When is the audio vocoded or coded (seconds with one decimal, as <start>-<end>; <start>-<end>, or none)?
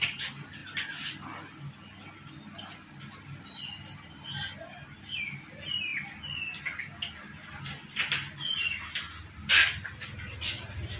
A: none